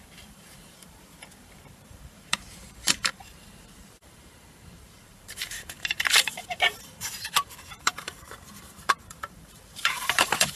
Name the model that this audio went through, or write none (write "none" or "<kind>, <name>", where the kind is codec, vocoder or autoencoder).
vocoder, BigVGAN v2